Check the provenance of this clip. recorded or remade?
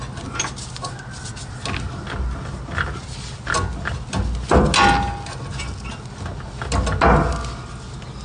recorded